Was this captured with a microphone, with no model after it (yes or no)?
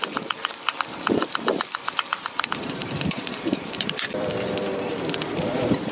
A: no